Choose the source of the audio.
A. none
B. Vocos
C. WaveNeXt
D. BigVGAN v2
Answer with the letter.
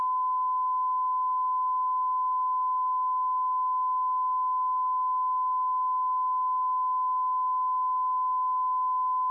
A